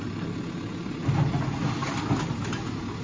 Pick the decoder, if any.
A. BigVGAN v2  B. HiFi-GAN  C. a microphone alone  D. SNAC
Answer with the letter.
C